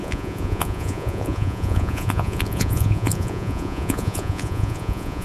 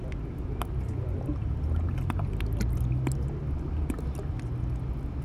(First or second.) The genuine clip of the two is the second